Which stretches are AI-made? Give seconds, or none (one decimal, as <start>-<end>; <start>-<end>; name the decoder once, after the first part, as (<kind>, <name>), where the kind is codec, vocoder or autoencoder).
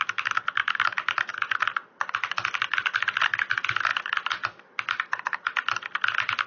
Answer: none